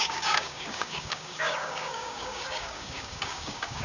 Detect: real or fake fake